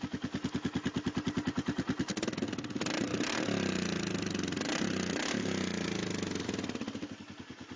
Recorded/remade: recorded